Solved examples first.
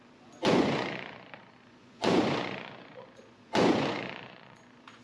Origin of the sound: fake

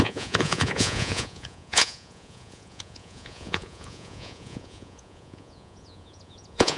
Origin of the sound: fake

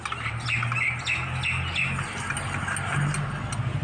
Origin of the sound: real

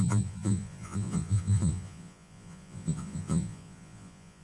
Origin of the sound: fake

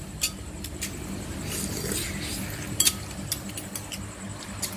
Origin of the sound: real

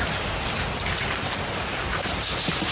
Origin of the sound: real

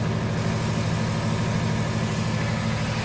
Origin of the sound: real